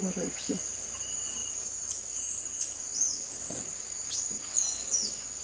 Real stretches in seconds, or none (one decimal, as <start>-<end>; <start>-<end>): none